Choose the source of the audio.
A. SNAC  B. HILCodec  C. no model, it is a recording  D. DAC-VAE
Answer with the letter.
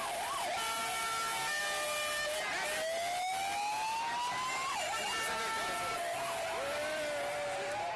C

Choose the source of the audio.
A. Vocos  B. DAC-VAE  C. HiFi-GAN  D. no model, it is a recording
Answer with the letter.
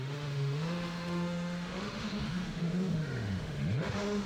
B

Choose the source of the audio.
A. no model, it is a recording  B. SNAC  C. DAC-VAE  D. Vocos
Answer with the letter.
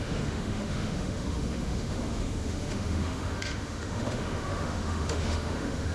C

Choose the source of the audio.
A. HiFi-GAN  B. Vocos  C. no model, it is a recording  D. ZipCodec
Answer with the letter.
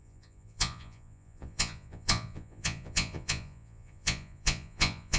B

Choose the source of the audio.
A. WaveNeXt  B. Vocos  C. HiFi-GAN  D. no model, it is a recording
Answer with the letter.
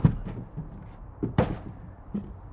D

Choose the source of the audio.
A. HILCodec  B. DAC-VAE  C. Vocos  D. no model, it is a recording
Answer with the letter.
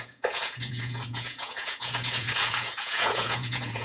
C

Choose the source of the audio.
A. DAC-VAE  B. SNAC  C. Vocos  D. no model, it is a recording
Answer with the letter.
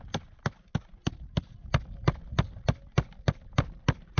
D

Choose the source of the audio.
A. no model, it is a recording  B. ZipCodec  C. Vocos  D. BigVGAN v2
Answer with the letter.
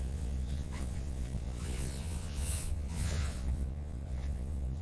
C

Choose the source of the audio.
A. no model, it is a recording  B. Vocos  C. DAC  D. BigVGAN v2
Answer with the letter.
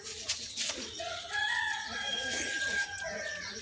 B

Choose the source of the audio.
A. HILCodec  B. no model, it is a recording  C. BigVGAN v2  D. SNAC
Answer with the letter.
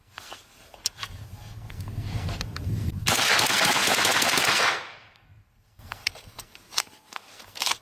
D